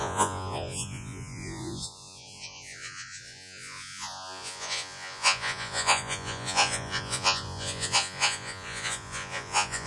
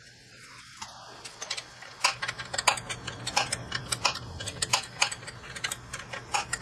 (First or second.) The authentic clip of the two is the second